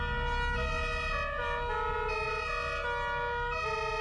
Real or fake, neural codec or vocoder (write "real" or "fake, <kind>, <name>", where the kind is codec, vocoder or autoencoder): real